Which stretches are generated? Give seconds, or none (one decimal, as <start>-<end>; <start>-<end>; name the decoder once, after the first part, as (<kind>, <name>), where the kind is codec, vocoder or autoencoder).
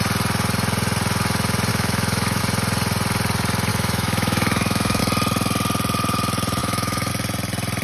1.7-2.4 (autoencoder, DAC-VAE); 3.7-5.0; 6.6-7.1